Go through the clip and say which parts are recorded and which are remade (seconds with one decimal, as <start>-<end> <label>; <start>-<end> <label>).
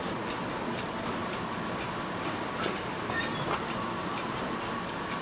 0.0-5.2 remade